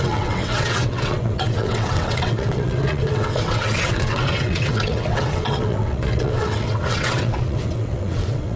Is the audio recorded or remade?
remade